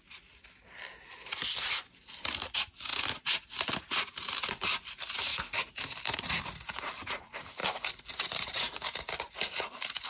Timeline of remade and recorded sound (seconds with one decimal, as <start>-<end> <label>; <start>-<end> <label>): 0.0-10.1 recorded